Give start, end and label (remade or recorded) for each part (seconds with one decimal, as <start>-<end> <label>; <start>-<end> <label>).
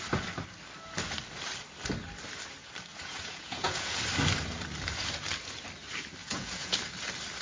0.0-2.9 recorded; 2.9-4.0 remade; 4.0-6.2 recorded; 6.2-6.8 remade; 6.8-7.4 recorded